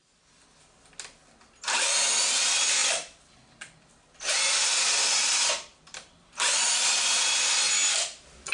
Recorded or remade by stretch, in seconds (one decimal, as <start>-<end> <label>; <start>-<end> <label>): 0.0-8.5 recorded